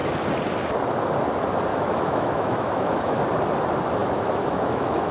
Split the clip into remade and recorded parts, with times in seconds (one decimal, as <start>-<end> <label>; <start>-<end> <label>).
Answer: 0.0-1.7 recorded; 1.7-3.2 remade; 3.2-4.0 recorded; 4.0-5.1 remade